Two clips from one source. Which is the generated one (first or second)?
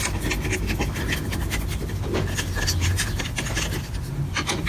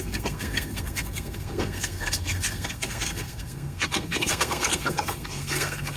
second